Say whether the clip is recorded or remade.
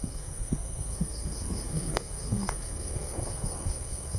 remade